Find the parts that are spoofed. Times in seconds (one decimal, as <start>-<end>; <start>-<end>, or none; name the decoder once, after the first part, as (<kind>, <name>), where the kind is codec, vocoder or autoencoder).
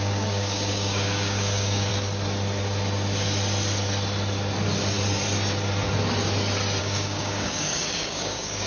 0.0-1.9 (codec, DAC); 6.8-8.7